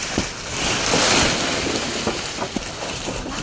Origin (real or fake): real